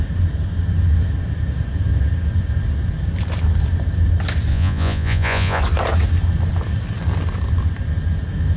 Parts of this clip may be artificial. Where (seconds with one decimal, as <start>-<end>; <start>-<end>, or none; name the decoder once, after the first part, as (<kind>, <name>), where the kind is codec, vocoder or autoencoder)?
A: 4.5-5.6 (vocoder, Vocos)